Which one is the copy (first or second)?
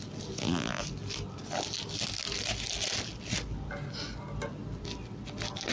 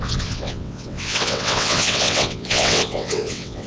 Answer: second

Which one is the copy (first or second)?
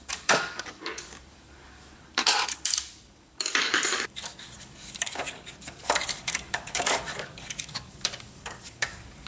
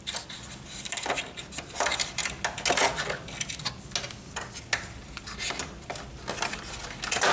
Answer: first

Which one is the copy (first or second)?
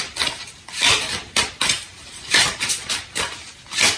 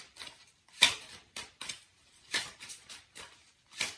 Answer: second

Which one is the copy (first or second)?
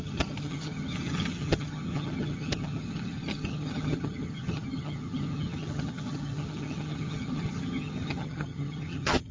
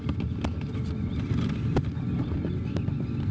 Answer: first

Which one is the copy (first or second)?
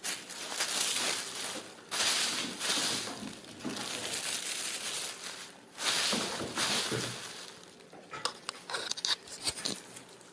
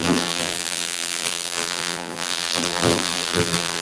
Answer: second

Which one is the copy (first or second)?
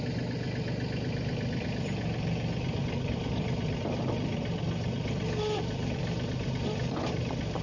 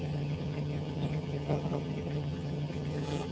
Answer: second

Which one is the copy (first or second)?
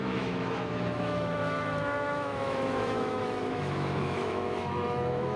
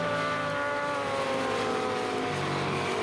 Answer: first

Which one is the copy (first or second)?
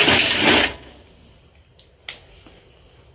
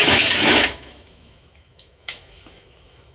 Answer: second